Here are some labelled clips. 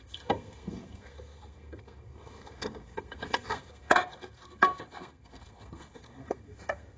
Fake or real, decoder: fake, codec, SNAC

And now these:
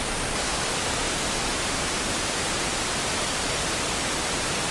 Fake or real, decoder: real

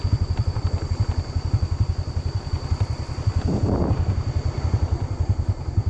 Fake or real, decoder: real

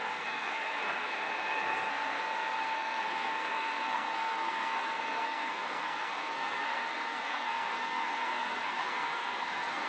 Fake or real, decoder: fake, codec, SNAC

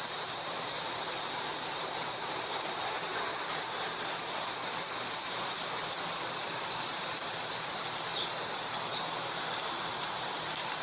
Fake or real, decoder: fake, vocoder, BigVGAN v2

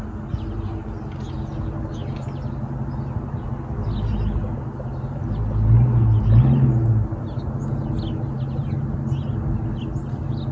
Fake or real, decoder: real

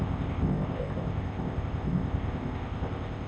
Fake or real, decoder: fake, codec, ZipCodec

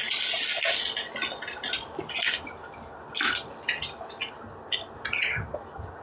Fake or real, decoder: real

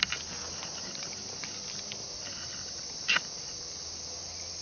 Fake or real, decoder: real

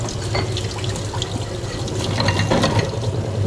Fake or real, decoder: real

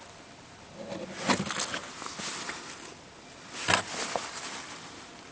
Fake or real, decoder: real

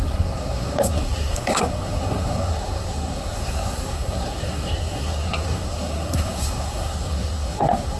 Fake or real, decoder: fake, codec, SNAC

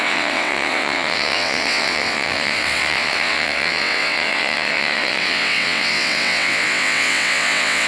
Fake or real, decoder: fake, vocoder, WaveNeXt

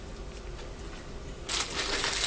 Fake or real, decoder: real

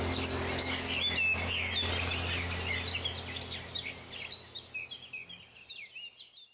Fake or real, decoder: real